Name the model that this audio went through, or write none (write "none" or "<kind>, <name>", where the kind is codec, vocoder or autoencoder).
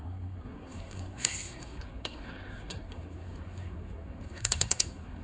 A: codec, SNAC